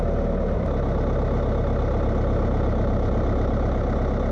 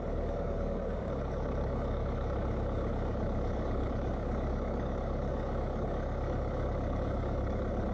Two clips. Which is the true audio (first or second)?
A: first